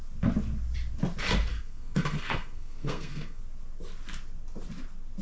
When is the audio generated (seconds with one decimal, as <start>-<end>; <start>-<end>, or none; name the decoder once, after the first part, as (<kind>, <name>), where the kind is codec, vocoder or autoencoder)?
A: 1.5-3.4 (codec, SNAC)